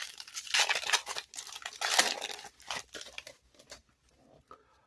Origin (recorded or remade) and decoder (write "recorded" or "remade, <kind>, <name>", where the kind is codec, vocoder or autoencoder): recorded